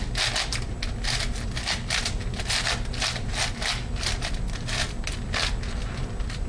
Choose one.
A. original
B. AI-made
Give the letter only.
A